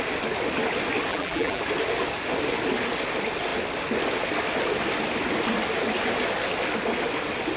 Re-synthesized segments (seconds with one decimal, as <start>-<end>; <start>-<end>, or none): 1.1-1.6